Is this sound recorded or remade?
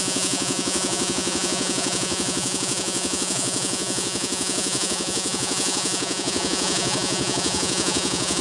remade